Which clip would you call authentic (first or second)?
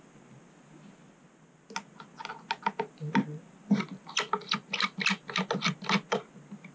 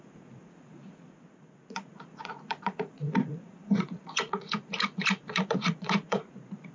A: first